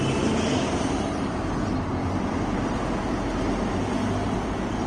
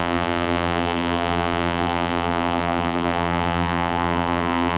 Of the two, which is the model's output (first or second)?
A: second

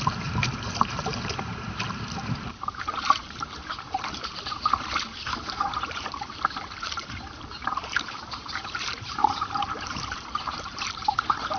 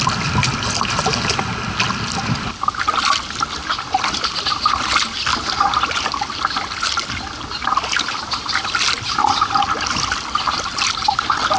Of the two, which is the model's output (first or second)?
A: first